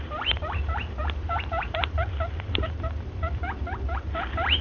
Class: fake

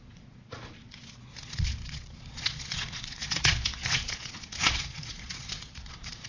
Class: fake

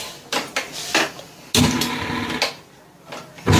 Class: real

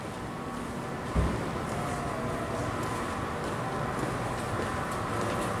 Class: real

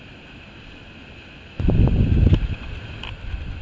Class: real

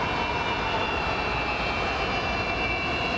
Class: real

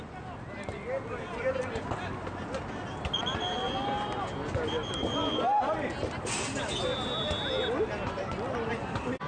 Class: real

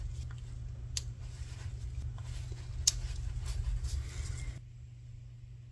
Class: real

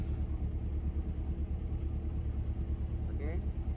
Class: real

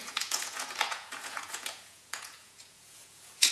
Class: fake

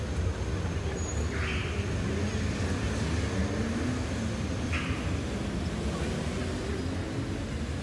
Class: real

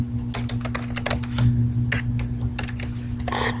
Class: real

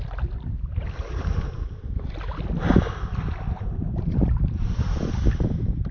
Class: real